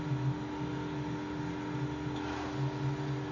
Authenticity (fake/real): real